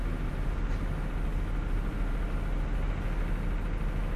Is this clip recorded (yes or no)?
yes